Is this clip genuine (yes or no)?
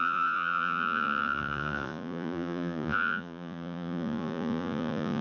no